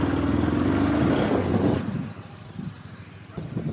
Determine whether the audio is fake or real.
real